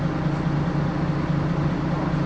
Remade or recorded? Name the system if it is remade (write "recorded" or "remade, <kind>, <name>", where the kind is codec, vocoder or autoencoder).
recorded